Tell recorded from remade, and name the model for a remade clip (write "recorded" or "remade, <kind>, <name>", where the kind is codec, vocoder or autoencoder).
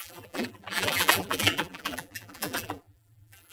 remade, vocoder, BigVGAN v2